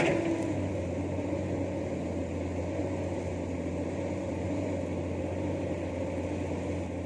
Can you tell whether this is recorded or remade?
recorded